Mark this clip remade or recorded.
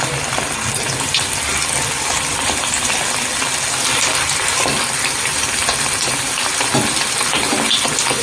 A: recorded